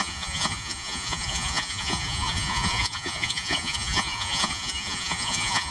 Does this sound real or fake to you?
fake